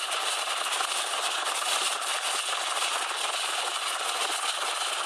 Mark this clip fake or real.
real